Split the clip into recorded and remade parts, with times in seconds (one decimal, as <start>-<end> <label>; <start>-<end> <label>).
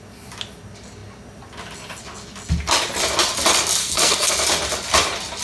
0.0-3.8 recorded; 3.8-4.3 remade; 4.3-5.4 recorded